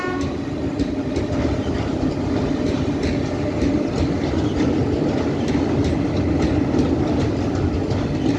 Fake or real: real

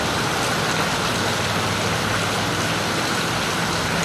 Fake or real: fake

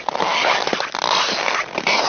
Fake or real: real